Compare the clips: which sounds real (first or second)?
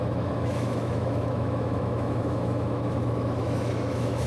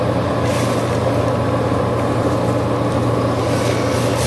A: second